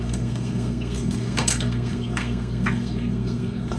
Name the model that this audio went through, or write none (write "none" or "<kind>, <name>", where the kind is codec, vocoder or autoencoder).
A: codec, SNAC